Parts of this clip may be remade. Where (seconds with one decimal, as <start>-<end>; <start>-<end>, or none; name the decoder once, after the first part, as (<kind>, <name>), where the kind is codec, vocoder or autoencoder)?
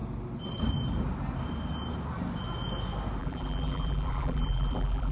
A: 3.2-5.1 (vocoder, BigVGAN v2)